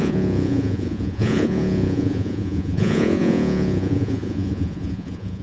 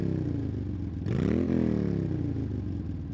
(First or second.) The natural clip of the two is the second